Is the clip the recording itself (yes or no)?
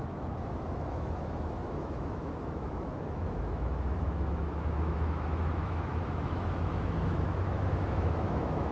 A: no